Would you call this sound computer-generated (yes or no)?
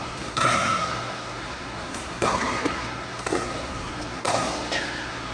yes